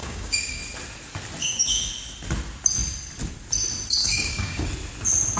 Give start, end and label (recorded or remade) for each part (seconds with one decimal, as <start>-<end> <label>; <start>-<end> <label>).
0.0-0.6 remade; 0.6-1.4 recorded; 1.4-1.9 remade; 1.9-4.0 recorded; 4.0-4.7 remade; 4.7-5.4 recorded